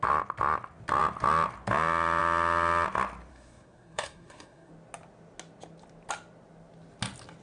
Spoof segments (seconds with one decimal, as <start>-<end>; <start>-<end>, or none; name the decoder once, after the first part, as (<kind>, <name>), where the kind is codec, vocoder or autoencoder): 3.3-4.7 (codec, SNAC)

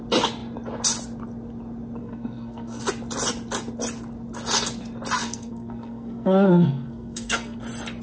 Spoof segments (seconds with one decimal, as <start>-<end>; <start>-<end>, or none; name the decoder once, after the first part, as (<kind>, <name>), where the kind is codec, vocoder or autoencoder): 2.0-2.8 (codec, SNAC); 5.2-7.6